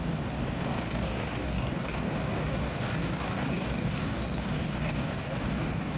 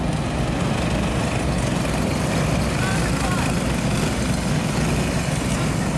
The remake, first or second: first